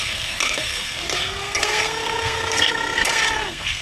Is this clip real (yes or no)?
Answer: no